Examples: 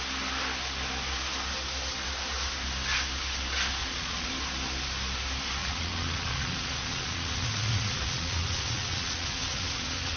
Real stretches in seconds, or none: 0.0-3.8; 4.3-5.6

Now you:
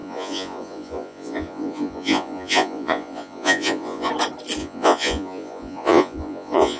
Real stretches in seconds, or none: 4.1-4.6

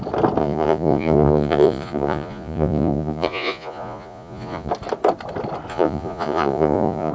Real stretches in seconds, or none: 0.0-0.4; 4.7-5.7

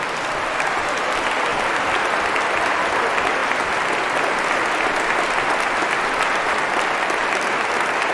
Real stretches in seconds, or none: 0.0-8.1

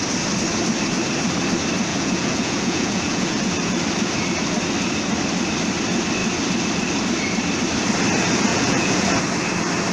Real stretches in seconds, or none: 0.0-1.9; 3.4-8.5; 9.1-9.9

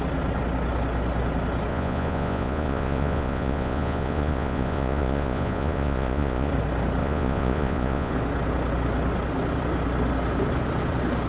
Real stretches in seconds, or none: 0.0-1.7; 6.5-7.0; 8.1-11.3